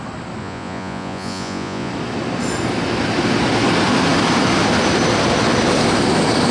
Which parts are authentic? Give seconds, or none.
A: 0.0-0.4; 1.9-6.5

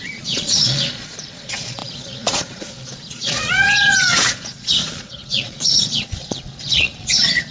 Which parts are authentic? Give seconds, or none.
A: none